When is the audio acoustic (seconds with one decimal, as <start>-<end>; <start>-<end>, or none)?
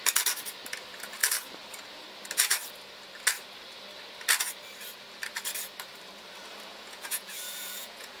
0.0-6.7